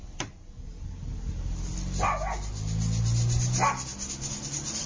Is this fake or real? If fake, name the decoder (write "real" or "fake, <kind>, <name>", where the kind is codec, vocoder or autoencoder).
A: real